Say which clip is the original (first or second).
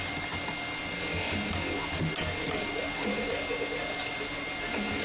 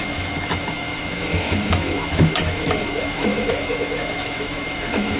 first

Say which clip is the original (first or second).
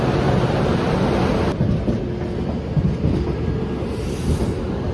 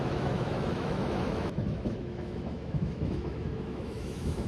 first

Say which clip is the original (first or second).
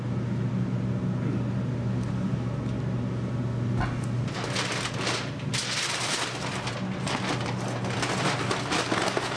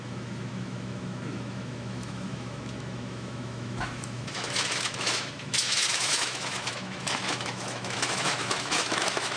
first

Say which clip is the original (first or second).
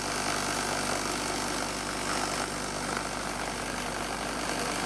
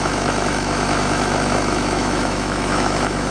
first